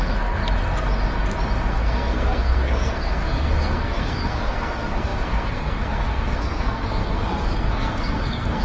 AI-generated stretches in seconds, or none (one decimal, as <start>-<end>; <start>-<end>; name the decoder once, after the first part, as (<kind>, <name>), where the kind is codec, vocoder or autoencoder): 0.0-0.4 (codec, SNAC); 1.7-8.6